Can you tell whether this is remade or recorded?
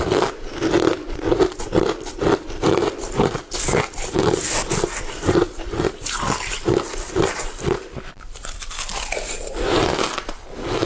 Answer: remade